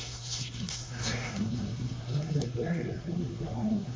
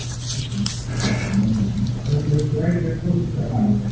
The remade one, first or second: first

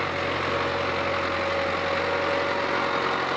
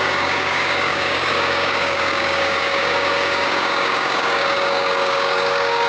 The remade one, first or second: second